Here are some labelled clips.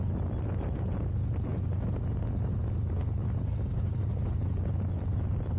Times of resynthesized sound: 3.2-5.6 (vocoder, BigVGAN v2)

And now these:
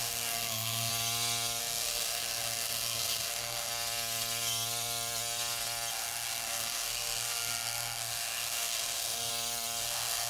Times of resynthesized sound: 0.0-0.9 (codec, SNAC); 1.6-3.7; 5.9-9.3; 9.8-10.3

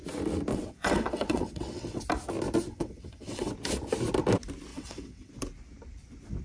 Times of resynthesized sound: 0.5-2.0 (vocoder, WaveNeXt); 2.7-3.5; 4.7-5.3